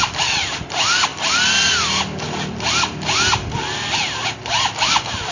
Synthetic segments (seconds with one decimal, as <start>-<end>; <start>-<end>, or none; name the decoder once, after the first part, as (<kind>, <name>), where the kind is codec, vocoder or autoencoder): none